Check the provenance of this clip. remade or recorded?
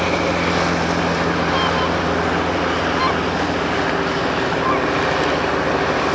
remade